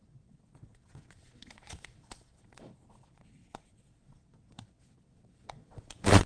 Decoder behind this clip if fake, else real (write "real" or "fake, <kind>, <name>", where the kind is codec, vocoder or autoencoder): fake, vocoder, WaveNeXt